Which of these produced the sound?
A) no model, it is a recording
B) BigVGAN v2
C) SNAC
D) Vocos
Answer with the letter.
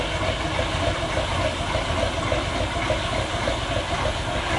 A